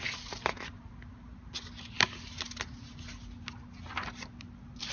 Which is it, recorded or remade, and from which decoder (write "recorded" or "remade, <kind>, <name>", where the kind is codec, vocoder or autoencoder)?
recorded